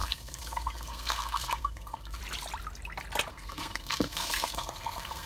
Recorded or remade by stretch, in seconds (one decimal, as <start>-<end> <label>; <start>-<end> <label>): 0.0-2.2 remade; 2.2-3.3 recorded; 3.3-5.3 remade